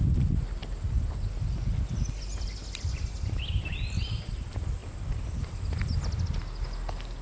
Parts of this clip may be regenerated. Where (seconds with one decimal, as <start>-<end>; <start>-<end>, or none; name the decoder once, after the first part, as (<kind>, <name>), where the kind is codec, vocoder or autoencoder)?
none